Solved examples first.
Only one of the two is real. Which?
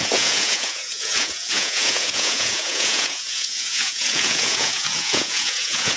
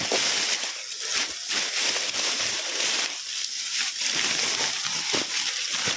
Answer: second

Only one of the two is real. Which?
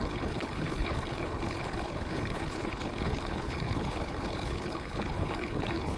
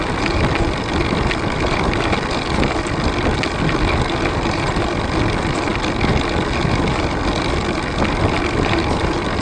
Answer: second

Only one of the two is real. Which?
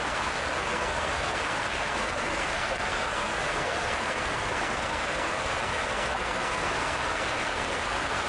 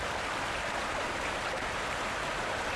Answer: second